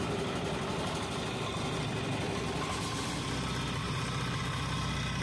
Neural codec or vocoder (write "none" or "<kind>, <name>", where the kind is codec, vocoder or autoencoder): none